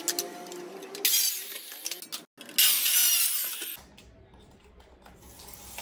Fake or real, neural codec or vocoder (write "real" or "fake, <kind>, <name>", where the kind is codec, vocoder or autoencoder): real